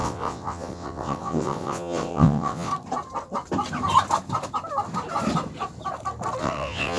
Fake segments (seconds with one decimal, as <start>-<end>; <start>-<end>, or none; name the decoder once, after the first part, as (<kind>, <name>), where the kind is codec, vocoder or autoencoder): 0.0-2.7 (vocoder, WaveNeXt); 6.4-7.0